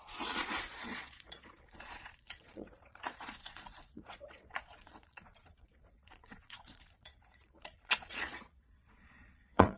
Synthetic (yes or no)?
yes